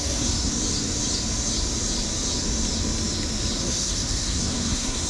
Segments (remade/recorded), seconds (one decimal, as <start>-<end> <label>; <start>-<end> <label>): 0.0-0.5 remade; 0.5-3.6 recorded; 3.6-5.1 remade